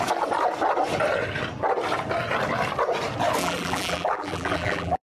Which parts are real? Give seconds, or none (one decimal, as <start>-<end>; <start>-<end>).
0.0-3.4